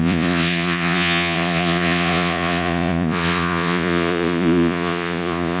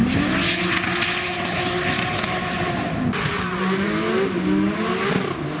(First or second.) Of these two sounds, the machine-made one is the first